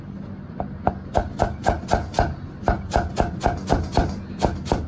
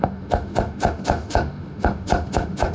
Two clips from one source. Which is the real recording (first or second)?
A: first